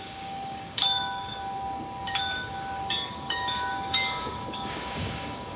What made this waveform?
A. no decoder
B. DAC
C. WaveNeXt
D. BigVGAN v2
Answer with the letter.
B